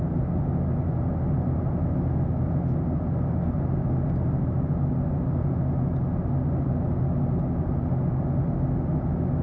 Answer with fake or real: real